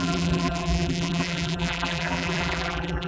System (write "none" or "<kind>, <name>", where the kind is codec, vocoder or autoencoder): vocoder, BigVGAN v2